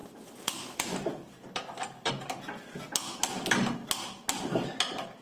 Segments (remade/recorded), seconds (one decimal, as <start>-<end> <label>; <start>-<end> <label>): 0.0-2.1 remade; 2.1-5.2 recorded